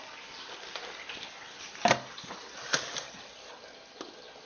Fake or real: real